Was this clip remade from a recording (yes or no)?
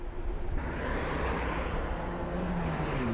yes